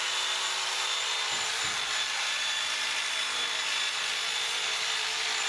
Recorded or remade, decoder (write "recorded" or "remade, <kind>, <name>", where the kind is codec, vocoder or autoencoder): remade, vocoder, BigVGAN v2